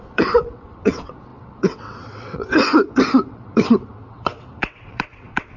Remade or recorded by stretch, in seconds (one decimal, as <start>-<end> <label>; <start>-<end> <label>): 0.0-5.6 remade

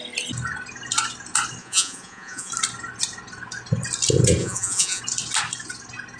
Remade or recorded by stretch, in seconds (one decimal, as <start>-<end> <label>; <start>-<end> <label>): 0.0-1.6 recorded; 1.6-2.5 remade; 2.5-4.4 recorded; 4.4-5.0 remade; 5.0-6.2 recorded

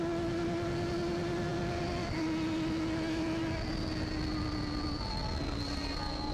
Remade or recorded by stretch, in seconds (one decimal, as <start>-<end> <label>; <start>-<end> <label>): 0.0-6.3 recorded

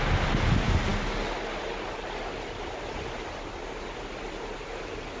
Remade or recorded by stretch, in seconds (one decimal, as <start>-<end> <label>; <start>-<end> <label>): 0.0-5.2 recorded

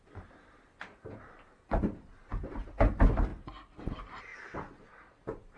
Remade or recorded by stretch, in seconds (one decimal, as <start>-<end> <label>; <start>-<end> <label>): 0.0-3.3 remade; 3.3-3.9 recorded; 3.9-4.3 remade; 4.3-4.9 recorded; 4.9-5.6 remade